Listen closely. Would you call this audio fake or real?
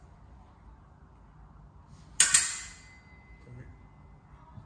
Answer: real